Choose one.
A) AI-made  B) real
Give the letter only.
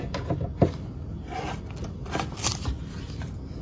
B